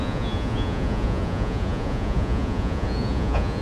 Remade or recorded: remade